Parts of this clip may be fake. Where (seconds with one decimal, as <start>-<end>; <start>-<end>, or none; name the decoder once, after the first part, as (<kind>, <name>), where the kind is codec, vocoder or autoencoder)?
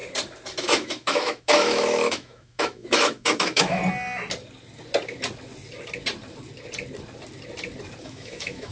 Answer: 0.6-3.8 (autoencoder, DAC-VAE); 8.0-8.7